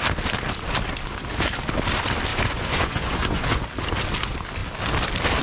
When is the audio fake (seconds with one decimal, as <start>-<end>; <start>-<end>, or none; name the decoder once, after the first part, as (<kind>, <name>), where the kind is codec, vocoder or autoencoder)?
2.3-3.6 (vocoder, Vocos)